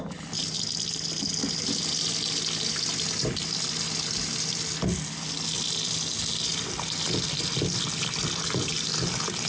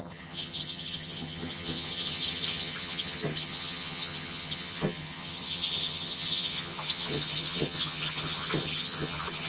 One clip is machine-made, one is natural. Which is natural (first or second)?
first